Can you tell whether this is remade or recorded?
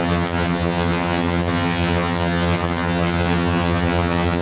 remade